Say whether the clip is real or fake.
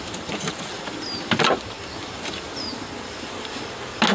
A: real